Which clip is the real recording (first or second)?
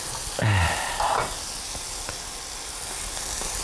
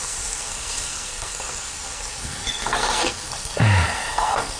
first